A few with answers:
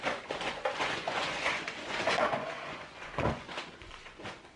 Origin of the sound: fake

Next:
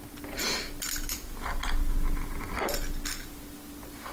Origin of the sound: real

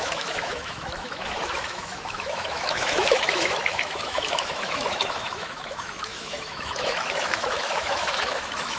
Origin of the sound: fake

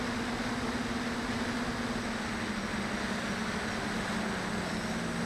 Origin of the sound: real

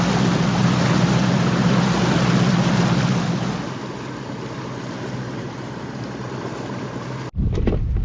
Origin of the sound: real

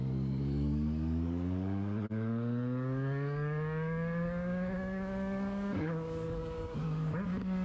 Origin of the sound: fake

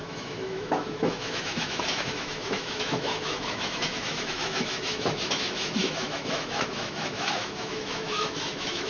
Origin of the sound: fake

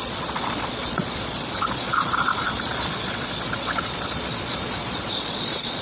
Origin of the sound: fake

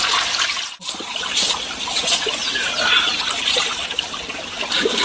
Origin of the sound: real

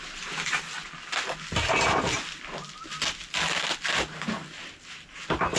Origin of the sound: real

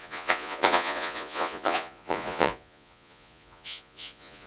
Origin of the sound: fake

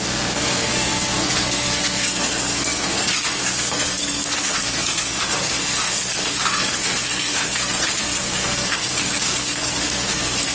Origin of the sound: fake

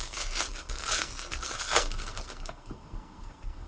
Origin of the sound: fake